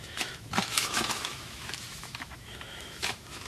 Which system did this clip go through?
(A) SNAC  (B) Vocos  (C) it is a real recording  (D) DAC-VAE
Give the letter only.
D